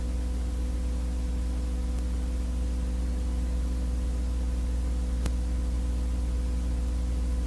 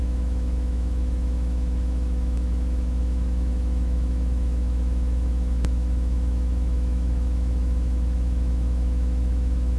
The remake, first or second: second